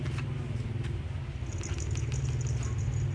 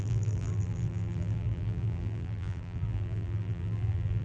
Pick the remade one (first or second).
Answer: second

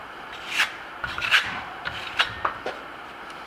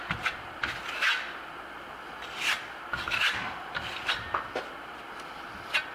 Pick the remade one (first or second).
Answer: first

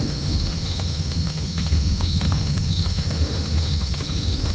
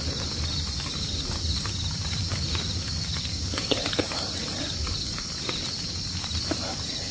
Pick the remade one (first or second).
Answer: first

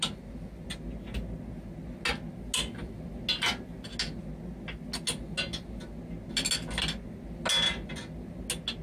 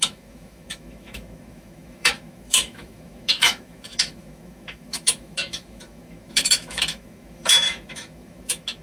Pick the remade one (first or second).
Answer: second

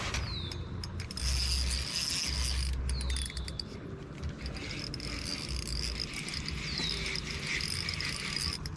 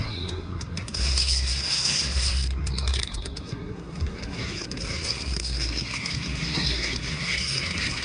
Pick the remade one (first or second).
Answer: second